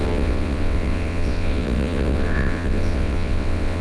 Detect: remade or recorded remade